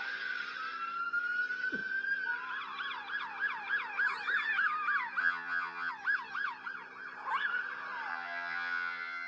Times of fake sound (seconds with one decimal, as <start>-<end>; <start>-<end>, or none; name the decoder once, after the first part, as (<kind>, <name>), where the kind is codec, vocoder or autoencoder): 5.2-5.9 (vocoder, HiFi-GAN); 8.1-9.3

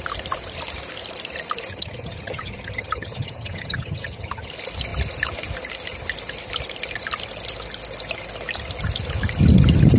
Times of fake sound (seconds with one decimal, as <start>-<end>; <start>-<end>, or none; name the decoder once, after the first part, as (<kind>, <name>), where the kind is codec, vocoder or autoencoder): 1.7-4.5 (vocoder, HiFi-GAN)

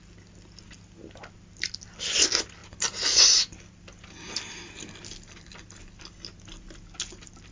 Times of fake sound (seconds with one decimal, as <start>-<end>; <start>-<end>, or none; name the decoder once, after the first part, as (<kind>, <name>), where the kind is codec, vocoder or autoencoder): none